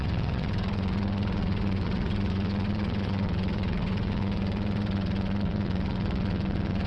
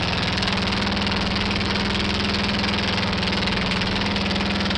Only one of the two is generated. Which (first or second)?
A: first